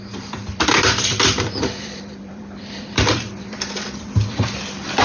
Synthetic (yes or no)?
yes